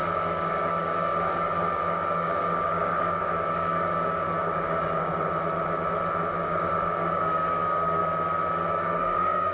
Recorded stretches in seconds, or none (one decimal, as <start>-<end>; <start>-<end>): 5.1-6.4; 8.0-8.7